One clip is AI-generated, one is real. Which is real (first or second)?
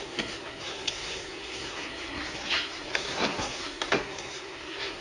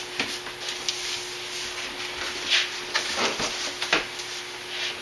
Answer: second